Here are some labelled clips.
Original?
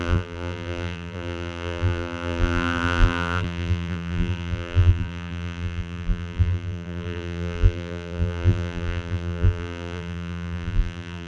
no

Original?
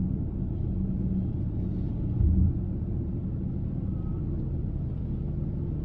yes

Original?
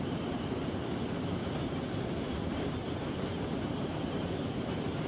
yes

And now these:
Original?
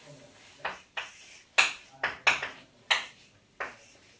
yes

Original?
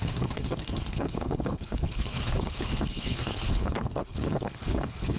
no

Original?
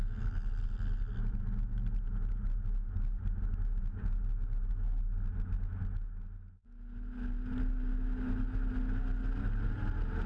yes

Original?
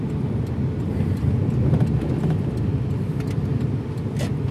yes